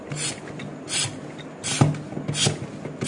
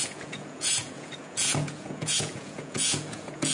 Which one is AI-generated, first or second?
second